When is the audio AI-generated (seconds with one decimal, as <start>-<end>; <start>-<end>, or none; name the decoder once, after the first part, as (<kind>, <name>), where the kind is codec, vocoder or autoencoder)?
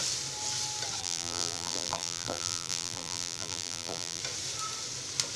1.0-4.2 (vocoder, BigVGAN v2)